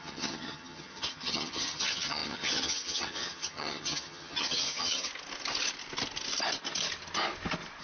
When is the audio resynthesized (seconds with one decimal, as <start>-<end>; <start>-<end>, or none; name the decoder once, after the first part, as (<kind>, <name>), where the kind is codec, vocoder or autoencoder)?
0.0-5.1 (vocoder, HiFi-GAN)